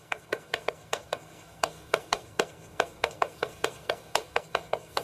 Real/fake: fake